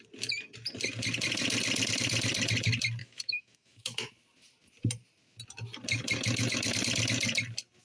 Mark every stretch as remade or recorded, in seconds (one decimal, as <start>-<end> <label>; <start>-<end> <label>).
0.0-3.0 recorded; 3.0-4.1 remade; 4.1-7.8 recorded